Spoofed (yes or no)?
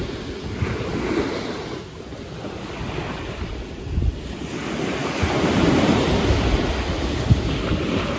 no